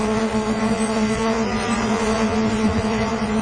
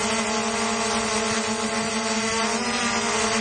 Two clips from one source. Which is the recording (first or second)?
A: second